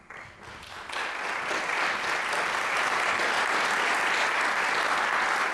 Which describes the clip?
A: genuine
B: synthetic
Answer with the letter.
A